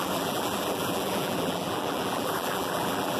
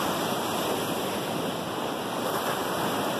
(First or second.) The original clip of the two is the second